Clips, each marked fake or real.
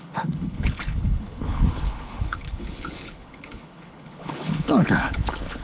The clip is fake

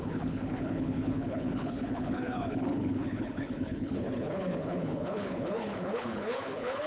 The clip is fake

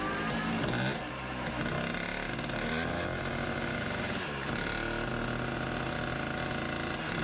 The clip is real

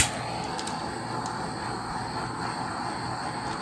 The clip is real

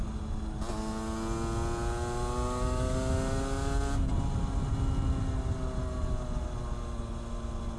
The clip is real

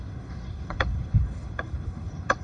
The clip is fake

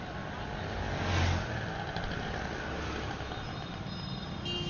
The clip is real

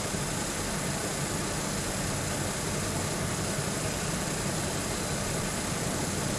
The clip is real